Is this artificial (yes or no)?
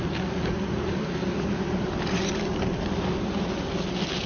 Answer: no